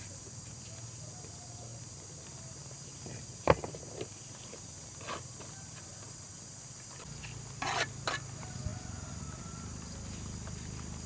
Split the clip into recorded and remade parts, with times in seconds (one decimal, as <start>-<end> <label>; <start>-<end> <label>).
0.0-11.1 recorded